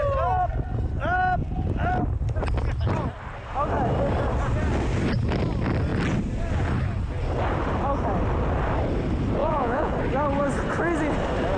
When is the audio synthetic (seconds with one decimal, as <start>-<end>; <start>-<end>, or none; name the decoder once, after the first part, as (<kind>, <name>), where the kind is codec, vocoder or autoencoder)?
9.4-9.9 (vocoder, Vocos)